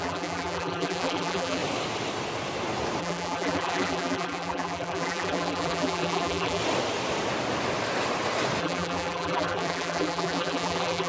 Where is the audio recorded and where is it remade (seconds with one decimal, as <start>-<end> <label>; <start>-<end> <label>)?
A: 0.0-1.6 remade; 1.6-3.0 recorded; 3.0-6.6 remade; 6.6-8.6 recorded; 8.6-11.1 remade